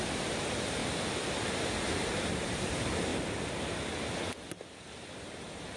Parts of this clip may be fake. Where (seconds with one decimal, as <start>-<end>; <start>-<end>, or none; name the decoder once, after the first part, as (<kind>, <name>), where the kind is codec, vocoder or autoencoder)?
0.0-0.8 (vocoder, BigVGAN v2); 2.3-3.1